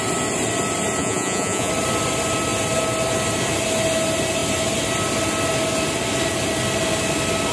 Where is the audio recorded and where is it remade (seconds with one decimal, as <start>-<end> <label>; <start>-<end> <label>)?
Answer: 0.0-1.0 recorded; 1.0-1.7 remade; 1.7-7.5 recorded